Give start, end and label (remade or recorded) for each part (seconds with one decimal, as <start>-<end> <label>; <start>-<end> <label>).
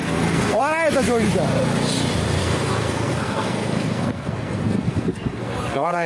0.0-0.6 remade; 0.6-2.4 recorded; 2.4-6.1 remade